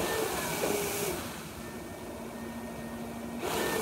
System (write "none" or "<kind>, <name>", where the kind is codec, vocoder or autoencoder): none